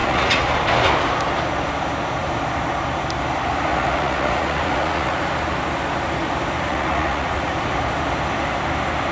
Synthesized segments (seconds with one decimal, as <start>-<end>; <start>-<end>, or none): 0.0-0.5; 3.7-5.3; 6.7-7.5